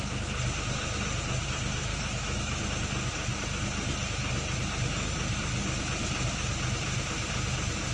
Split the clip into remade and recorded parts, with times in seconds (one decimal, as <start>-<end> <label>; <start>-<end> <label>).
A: 0.0-1.9 recorded; 1.9-2.7 remade; 2.7-7.9 recorded